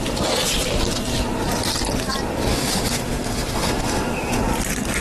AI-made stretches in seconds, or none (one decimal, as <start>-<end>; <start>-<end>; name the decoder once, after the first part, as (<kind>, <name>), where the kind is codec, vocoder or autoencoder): 2.5-4.4 (autoencoder, DAC-VAE)